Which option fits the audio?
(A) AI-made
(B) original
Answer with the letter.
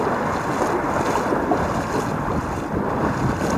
B